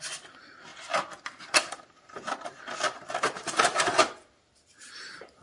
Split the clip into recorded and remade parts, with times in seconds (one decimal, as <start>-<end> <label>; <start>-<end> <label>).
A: 0.0-5.4 remade